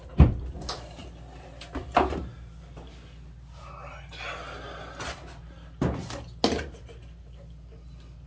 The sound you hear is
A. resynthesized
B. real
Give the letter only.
B